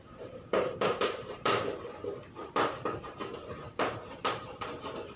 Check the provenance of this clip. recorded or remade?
remade